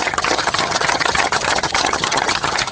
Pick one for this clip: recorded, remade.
remade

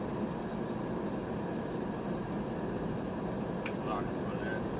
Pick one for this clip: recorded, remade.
recorded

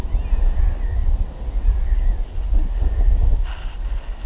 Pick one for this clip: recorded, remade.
recorded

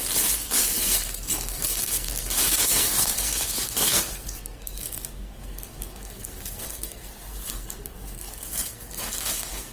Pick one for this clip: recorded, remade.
remade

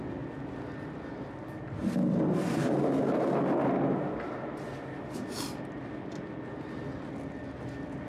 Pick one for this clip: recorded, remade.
recorded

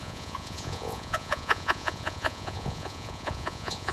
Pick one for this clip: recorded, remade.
remade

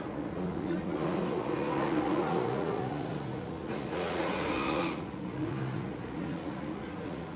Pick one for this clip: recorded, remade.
remade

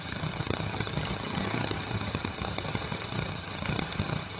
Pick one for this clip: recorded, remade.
remade